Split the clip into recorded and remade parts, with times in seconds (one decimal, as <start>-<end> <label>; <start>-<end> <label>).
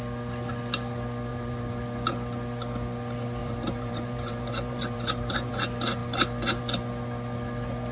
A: 0.0-1.3 recorded; 1.3-1.8 remade; 1.8-3.4 recorded; 3.4-5.5 remade; 5.5-7.9 recorded